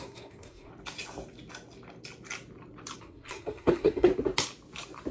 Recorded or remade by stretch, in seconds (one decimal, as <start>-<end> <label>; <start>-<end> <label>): 0.0-0.7 remade; 0.7-3.0 recorded; 3.0-4.1 remade; 4.1-5.1 recorded